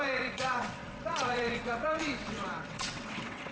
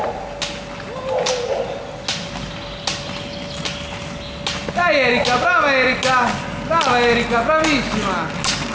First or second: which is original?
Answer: second